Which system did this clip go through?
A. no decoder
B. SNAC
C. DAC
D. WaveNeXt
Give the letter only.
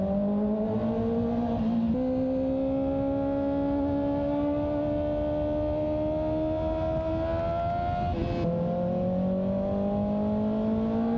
A